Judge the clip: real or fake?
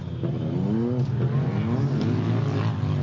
real